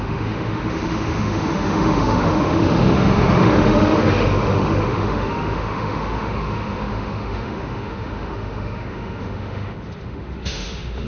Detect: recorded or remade remade